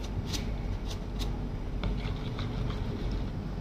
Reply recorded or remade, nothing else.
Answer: recorded